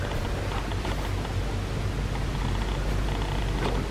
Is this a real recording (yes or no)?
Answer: yes